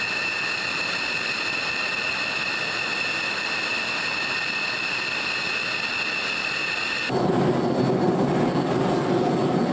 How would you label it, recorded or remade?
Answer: recorded